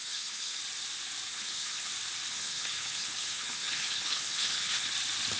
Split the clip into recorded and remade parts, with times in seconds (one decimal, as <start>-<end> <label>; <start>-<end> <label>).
0.0-0.6 remade; 0.6-1.3 recorded; 1.3-1.9 remade; 1.9-2.3 recorded; 2.3-4.9 remade; 4.9-5.4 recorded